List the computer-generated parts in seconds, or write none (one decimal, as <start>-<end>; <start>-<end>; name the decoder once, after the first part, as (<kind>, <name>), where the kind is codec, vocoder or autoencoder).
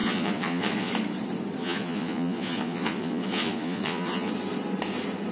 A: 0.0-0.9 (vocoder, Vocos); 1.6-4.3